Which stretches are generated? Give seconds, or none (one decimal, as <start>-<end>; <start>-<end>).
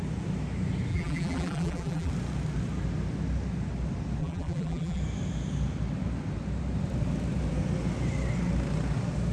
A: 0.9-2.1; 4.2-5.0